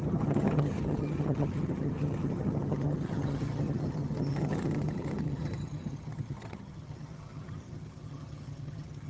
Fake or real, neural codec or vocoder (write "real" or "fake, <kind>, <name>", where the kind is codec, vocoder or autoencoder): fake, vocoder, HiFi-GAN